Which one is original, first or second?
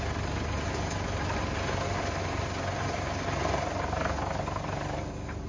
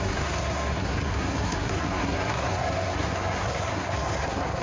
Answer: first